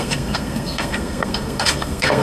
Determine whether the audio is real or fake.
fake